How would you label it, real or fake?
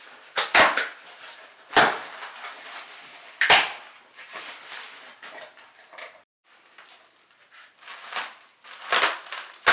fake